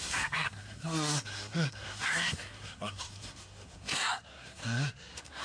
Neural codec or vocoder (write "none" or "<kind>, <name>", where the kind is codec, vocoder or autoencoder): codec, SNAC